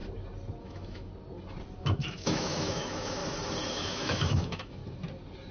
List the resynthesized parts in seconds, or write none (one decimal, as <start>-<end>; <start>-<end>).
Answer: 0.6-1.1; 1.8-3.2; 3.7-4.8